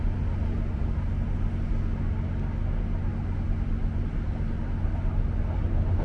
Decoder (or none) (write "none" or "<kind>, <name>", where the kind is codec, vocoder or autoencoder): none